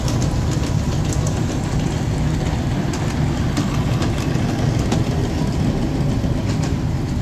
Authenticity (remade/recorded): recorded